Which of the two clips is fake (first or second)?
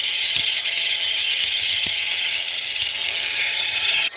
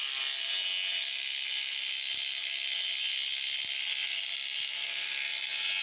first